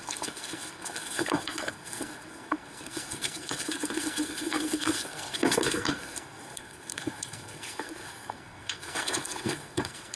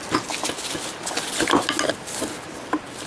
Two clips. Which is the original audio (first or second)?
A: second